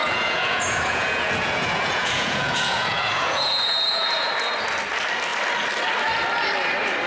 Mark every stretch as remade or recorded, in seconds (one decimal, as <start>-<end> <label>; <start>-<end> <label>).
0.0-4.3 remade; 4.3-7.1 recorded